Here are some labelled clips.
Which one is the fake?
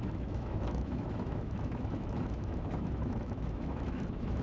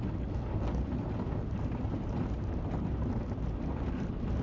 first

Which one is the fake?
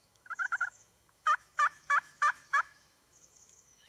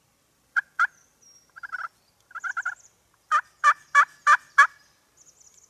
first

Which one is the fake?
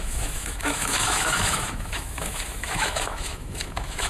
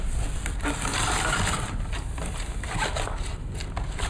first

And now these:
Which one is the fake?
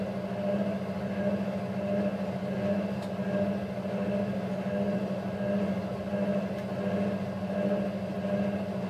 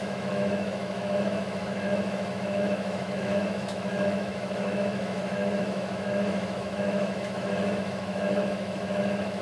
second